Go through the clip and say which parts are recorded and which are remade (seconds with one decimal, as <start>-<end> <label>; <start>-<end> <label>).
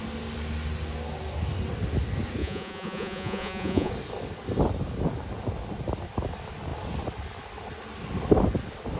0.0-2.4 recorded; 2.4-3.9 remade; 3.9-9.0 recorded